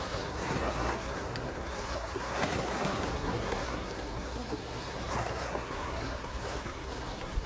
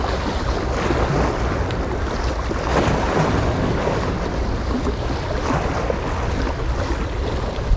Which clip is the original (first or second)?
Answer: second